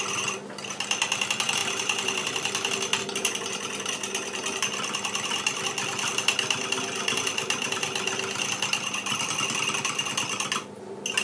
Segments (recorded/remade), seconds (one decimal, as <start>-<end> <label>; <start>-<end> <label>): 0.0-11.2 recorded